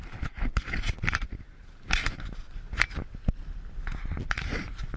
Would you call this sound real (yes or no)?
yes